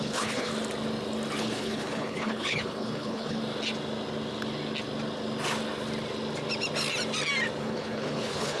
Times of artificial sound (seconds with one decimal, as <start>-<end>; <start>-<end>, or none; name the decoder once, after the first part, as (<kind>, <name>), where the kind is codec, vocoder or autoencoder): 0.0-0.5 (codec, HILCodec); 1.4-3.4; 7.6-8.6